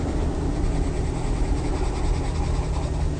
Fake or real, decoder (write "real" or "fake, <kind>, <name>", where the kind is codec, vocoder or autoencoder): real